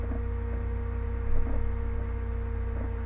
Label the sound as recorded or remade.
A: recorded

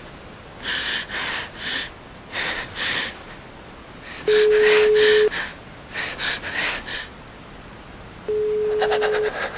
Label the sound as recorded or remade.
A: recorded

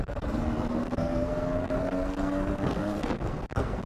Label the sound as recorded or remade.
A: remade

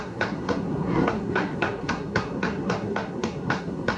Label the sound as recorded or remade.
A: remade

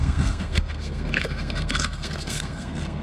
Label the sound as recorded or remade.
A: remade